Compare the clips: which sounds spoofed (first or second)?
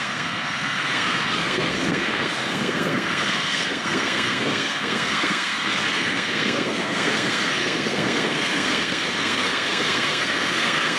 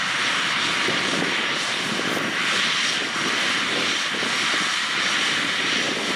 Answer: first